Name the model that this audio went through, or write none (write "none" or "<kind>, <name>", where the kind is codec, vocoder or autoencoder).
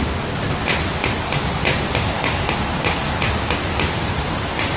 none